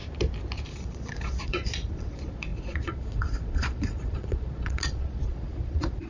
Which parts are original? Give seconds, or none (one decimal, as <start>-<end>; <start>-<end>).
0.0-0.7